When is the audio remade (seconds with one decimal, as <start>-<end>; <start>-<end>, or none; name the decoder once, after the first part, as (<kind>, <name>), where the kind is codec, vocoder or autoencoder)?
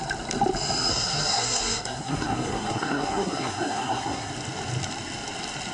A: 0.9-4.3 (codec, SNAC)